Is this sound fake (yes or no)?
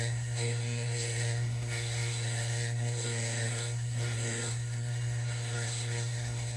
yes